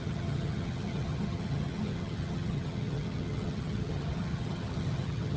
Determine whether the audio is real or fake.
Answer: fake